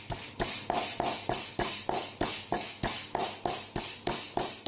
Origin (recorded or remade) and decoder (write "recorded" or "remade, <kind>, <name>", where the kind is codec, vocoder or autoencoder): recorded